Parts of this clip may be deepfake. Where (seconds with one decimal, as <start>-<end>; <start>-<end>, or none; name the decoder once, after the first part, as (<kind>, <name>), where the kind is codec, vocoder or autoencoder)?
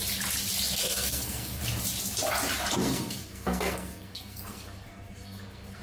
0.8-1.6 (codec, SNAC); 2.8-5.8